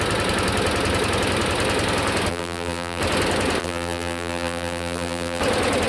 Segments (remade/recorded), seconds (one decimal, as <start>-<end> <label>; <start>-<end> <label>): 0.0-2.3 recorded; 2.3-3.0 remade; 3.0-3.6 recorded; 3.6-5.4 remade; 5.4-5.9 recorded